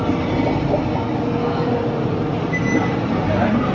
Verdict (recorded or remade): recorded